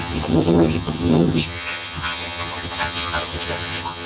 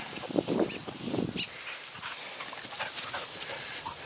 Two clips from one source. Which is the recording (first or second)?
second